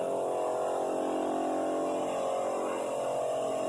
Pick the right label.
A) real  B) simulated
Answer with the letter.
A